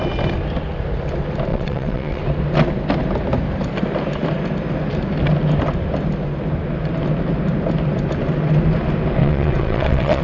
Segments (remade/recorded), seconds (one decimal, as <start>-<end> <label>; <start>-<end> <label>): 0.0-1.5 recorded; 1.5-2.2 remade; 2.2-9.2 recorded; 9.2-10.2 remade